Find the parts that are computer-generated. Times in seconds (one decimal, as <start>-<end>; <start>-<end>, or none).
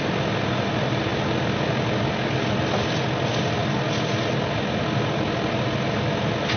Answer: none